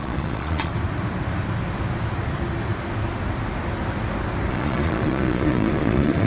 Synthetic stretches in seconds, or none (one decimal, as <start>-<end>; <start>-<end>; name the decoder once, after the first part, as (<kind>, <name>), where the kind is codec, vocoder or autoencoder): 0.0-0.7 (vocoder, Vocos); 4.5-6.3